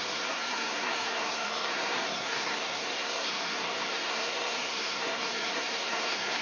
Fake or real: fake